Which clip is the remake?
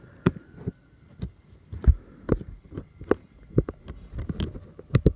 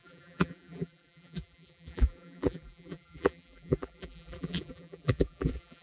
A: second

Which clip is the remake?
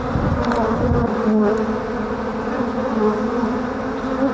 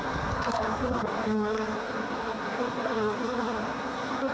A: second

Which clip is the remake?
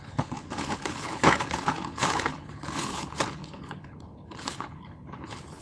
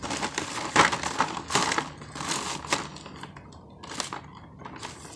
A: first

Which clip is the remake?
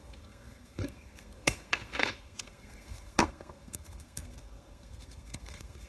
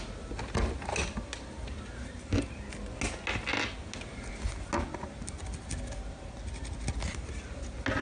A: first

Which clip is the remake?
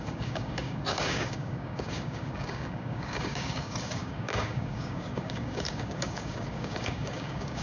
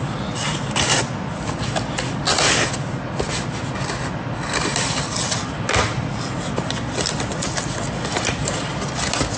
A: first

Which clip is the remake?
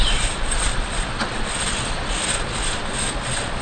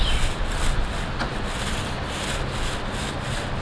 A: first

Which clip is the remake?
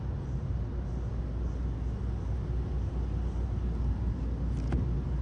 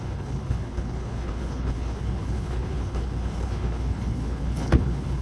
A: second